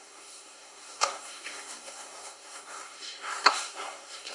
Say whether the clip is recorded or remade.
remade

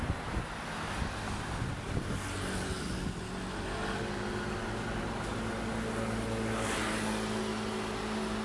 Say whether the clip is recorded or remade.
recorded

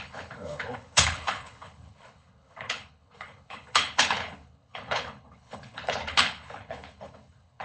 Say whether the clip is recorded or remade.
remade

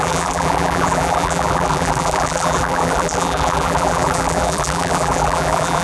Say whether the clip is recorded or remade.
remade